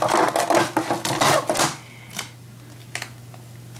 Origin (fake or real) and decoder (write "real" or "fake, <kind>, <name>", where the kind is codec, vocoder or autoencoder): real